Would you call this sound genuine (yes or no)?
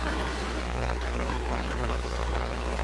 no